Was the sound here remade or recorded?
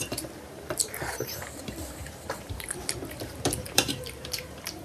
remade